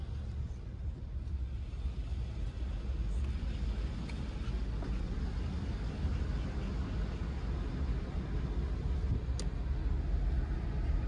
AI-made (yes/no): no